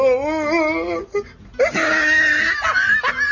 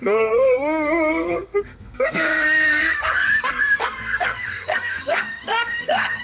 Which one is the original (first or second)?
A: first